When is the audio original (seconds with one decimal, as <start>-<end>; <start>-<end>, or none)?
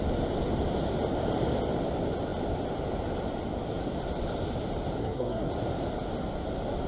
0.0-5.0; 5.5-6.9